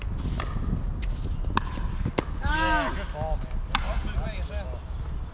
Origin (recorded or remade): recorded